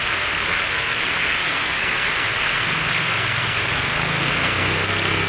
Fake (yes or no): yes